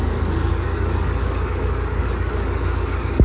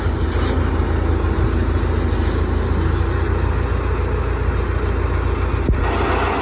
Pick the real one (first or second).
second